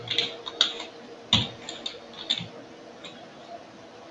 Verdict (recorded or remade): recorded